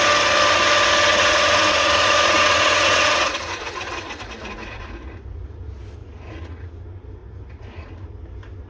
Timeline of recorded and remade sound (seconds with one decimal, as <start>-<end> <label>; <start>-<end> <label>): 0.0-1.1 recorded; 1.1-5.6 remade; 5.6-6.0 recorded; 6.0-6.7 remade; 6.7-7.2 recorded; 7.2-7.9 remade; 7.9-8.7 recorded